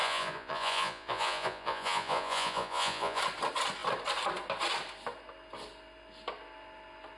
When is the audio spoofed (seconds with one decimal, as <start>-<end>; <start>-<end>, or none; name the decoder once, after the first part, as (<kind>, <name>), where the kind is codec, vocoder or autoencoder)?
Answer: 0.0-3.2 (vocoder, Vocos)